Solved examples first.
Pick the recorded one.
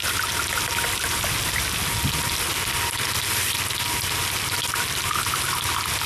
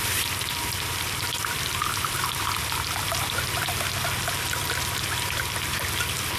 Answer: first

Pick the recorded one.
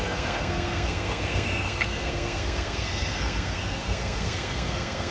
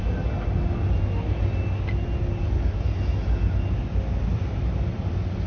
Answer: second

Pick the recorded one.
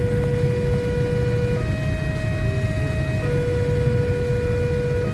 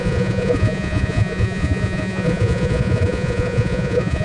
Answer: first